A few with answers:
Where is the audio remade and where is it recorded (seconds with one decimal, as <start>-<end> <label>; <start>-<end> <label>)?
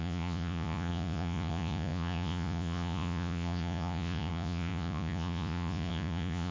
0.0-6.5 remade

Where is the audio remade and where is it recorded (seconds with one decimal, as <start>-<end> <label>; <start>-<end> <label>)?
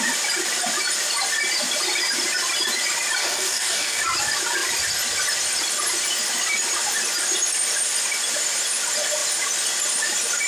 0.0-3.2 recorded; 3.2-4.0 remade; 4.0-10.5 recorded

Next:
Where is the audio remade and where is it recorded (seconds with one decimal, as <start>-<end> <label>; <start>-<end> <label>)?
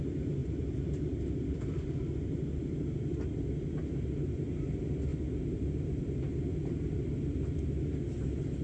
0.0-0.4 recorded; 0.4-2.8 remade; 2.8-5.1 recorded; 5.1-7.4 remade; 7.4-8.6 recorded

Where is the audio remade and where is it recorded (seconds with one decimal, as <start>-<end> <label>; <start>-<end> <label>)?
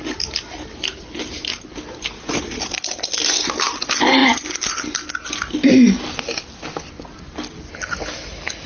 0.0-8.7 recorded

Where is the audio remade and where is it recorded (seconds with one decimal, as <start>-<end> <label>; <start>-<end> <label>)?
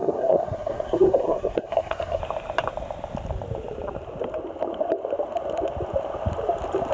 0.0-2.2 remade; 2.2-6.9 recorded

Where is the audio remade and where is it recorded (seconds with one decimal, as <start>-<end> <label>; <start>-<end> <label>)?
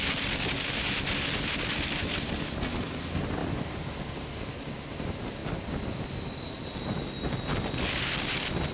0.0-8.7 recorded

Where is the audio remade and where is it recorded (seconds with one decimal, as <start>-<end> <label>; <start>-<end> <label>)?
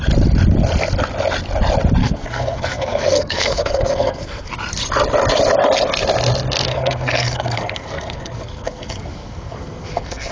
0.0-2.0 recorded; 2.0-4.5 remade; 4.5-6.7 recorded; 6.7-10.3 remade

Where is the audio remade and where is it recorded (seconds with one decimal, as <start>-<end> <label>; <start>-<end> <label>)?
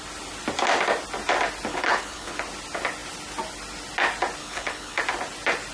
0.0-1.7 recorded; 1.7-2.4 remade; 2.4-4.4 recorded; 4.4-5.0 remade; 5.0-5.7 recorded